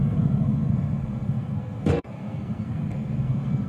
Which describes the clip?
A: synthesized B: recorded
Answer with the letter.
A